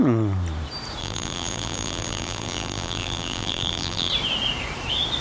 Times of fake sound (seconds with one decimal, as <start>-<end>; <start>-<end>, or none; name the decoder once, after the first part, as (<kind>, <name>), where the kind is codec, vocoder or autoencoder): 1.0-4.1 (vocoder, BigVGAN v2)

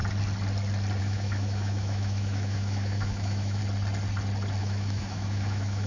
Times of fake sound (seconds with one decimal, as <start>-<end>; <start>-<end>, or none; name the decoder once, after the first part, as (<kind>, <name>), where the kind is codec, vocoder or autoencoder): 1.0-3.6 (autoencoder, DAC-VAE); 4.6-5.9

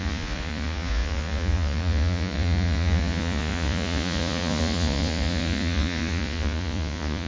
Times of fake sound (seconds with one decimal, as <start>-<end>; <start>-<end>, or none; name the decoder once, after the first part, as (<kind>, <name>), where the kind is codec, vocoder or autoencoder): 0.0-7.3 (vocoder, Vocos)

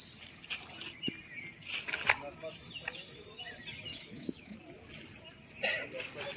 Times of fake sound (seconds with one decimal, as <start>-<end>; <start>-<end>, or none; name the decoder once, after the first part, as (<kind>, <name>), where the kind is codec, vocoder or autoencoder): 3.9-4.6 (autoencoder, DAC-VAE)